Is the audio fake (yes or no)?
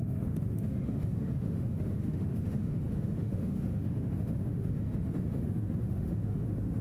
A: yes